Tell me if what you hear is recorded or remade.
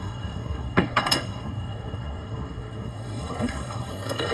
remade